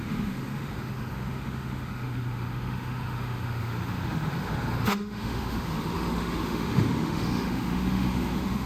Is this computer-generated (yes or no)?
yes